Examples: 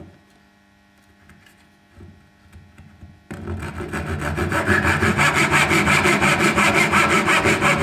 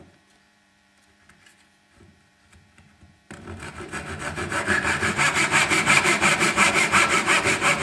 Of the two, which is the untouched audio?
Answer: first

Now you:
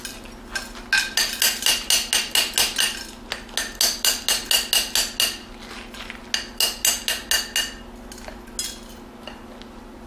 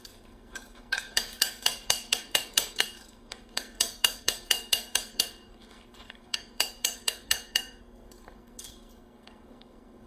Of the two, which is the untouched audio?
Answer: first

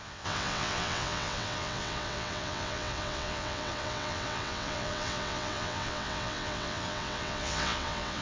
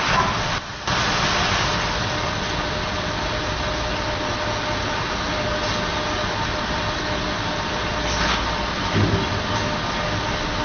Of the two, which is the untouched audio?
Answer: second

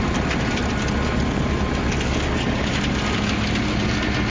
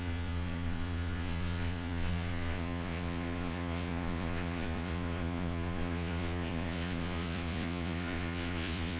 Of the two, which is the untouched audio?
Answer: first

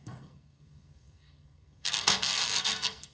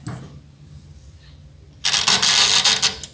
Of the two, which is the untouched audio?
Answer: second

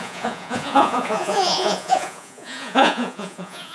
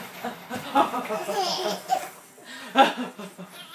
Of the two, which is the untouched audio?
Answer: second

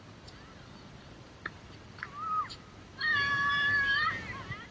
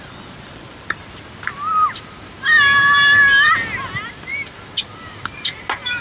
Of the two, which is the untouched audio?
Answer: second